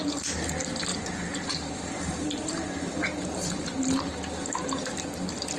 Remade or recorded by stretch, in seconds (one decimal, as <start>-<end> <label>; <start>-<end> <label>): 0.0-0.9 recorded; 0.9-3.9 remade; 3.9-5.6 recorded